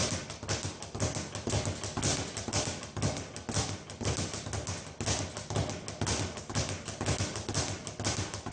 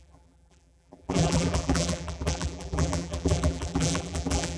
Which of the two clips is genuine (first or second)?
first